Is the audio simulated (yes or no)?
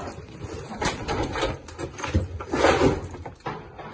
no